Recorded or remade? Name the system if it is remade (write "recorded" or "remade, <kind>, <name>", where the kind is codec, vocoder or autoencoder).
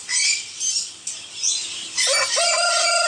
recorded